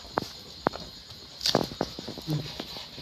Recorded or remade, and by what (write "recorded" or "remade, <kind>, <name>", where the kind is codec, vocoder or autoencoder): recorded